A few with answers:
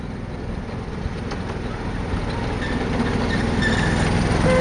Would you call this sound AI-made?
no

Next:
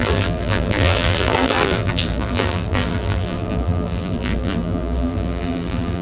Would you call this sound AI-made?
yes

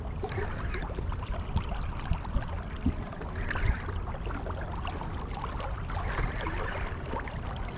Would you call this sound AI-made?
no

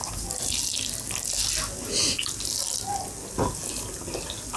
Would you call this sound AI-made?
no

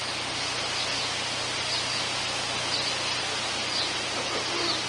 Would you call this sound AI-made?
no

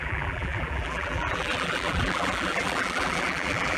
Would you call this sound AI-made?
yes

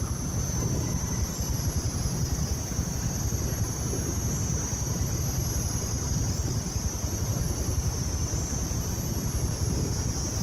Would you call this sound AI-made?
no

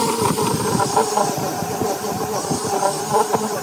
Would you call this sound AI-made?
yes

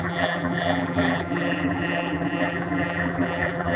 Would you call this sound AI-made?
yes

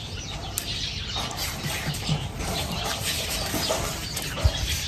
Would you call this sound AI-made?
yes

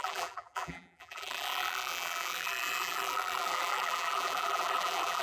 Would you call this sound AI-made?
yes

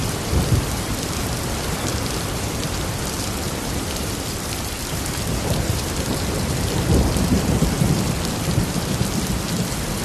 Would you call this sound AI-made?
yes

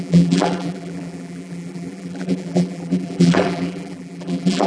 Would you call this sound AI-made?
yes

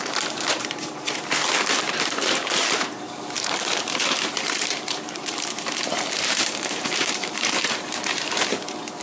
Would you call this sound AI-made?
yes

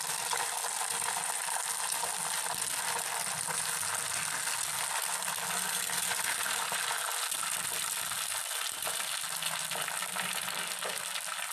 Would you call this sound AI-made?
no